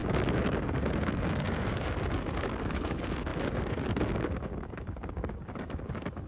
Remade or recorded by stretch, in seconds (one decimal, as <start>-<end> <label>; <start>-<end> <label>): 0.0-6.3 remade